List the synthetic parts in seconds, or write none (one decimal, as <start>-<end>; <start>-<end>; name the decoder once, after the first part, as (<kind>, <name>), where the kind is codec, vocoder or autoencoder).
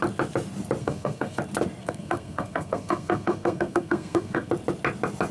0.8-1.4 (codec, SNAC); 1.8-4.5